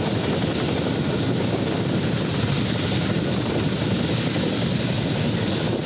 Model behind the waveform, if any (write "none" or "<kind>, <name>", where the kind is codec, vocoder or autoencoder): none